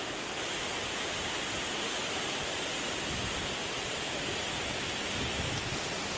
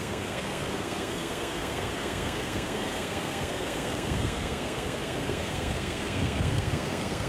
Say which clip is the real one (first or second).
first